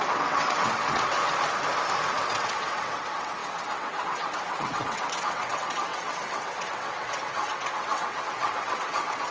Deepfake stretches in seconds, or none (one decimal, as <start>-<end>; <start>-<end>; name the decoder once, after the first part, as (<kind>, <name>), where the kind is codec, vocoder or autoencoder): 0.0-1.2 (vocoder, WaveNeXt); 2.3-9.3